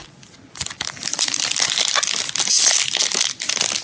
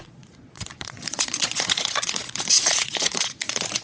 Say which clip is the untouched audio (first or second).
first